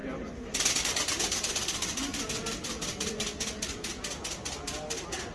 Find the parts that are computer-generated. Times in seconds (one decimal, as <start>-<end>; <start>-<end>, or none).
none